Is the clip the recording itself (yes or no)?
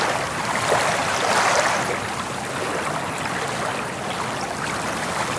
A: yes